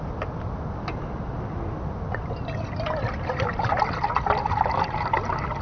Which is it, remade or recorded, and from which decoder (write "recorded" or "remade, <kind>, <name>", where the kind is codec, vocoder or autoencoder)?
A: recorded